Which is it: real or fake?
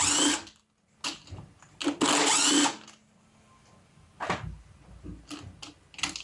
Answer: real